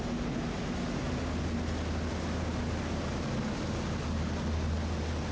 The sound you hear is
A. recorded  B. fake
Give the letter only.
A